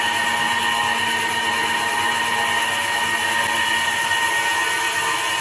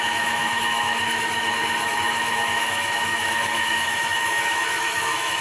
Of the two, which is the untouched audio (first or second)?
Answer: first